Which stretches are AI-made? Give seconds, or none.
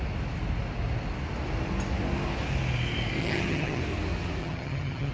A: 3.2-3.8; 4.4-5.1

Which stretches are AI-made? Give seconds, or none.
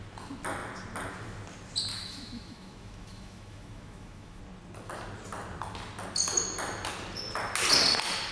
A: 1.9-4.4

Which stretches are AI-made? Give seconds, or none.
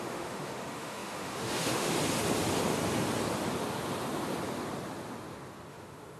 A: 0.0-2.0; 5.7-6.2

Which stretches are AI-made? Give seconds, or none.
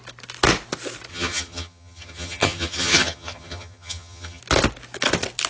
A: 1.1-4.4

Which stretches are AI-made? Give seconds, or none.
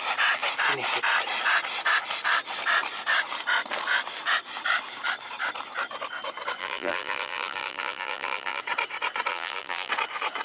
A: 6.6-8.6; 9.3-9.9